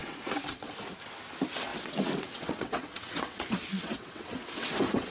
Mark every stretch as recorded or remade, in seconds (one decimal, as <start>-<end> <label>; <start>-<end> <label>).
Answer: 0.0-0.7 remade; 0.7-1.7 recorded; 1.7-5.1 remade